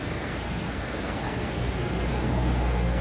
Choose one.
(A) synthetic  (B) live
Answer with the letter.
A